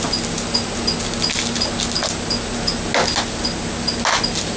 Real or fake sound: real